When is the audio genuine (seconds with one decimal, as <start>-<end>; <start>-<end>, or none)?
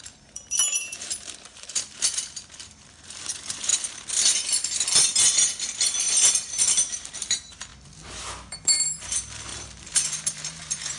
3.7-6.3; 7.7-8.5